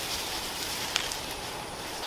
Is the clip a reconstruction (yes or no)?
yes